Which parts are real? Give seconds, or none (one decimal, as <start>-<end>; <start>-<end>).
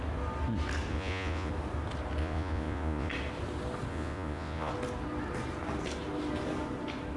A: 0.0-0.9; 1.5-2.2; 3.1-3.9; 4.7-7.2